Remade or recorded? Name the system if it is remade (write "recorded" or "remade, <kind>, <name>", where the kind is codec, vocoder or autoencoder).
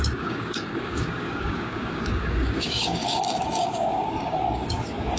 remade, codec, DAC